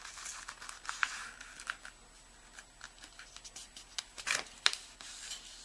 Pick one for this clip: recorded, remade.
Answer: recorded